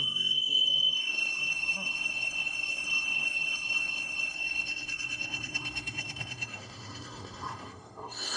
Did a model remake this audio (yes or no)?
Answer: yes